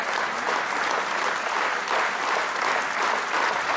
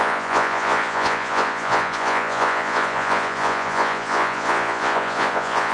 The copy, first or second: second